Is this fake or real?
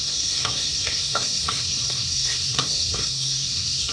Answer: fake